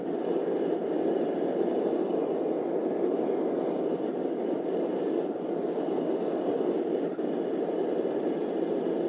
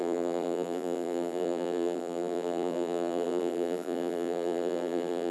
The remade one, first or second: second